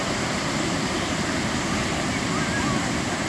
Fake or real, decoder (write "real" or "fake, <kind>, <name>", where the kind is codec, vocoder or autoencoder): real